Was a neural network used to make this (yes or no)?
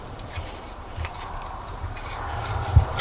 yes